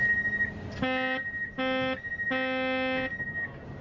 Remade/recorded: recorded